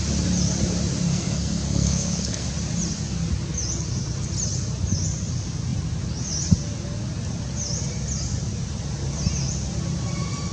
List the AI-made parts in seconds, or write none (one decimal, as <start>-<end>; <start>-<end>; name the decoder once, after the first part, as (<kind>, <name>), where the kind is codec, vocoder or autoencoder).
1.1-2.5 (codec, SNAC)